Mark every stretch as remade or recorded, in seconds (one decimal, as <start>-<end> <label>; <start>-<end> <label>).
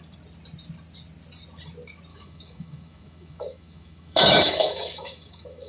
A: 0.0-2.1 recorded; 2.1-5.7 remade